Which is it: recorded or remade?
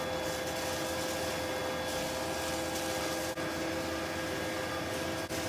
recorded